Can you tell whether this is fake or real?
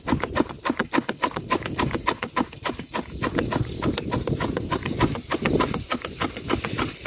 real